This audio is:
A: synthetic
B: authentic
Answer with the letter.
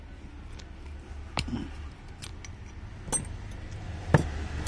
B